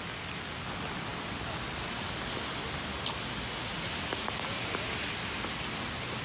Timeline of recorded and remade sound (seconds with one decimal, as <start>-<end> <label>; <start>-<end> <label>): 0.0-6.2 recorded